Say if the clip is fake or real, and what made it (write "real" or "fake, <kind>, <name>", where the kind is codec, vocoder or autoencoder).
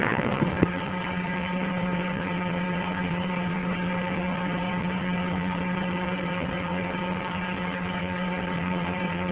fake, vocoder, WaveNeXt